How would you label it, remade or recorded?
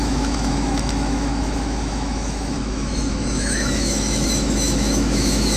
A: remade